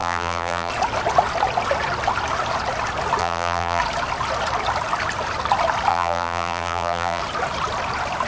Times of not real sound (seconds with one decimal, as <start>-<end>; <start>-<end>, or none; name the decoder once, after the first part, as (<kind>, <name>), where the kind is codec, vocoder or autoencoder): 0.0-0.7 (vocoder, BigVGAN v2); 3.2-3.8; 5.9-7.2